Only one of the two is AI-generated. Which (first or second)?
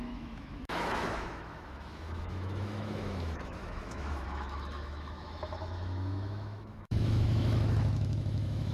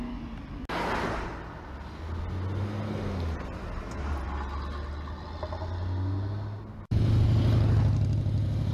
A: first